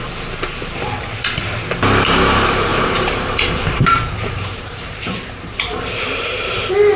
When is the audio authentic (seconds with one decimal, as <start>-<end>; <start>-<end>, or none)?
0.0-2.7